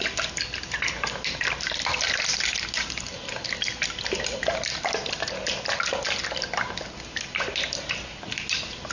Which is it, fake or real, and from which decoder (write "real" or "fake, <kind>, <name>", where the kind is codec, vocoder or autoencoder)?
real